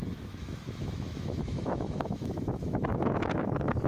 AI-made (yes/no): yes